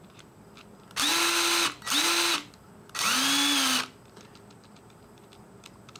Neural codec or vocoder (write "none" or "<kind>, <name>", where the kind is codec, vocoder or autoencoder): none